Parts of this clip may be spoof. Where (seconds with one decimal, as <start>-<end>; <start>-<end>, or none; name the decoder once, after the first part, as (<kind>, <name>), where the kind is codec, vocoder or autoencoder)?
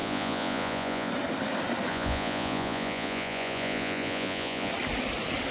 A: 0.0-1.1 (vocoder, Vocos); 1.9-4.7